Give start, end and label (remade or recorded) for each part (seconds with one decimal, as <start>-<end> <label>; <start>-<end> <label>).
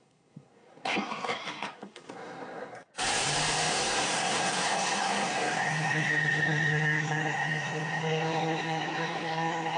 0.0-2.9 remade; 2.9-3.7 recorded; 3.7-9.8 remade